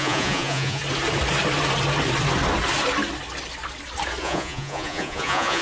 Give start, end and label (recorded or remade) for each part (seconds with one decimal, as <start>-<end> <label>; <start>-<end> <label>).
0.0-0.8 remade; 0.8-4.2 recorded; 4.2-5.6 remade